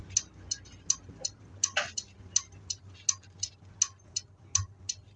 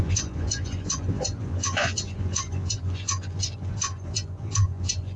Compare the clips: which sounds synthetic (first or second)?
second